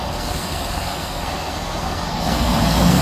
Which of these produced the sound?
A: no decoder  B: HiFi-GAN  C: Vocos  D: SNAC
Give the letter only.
D